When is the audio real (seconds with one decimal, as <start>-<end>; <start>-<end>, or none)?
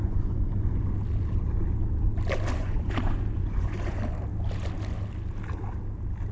0.9-2.6; 4.0-6.3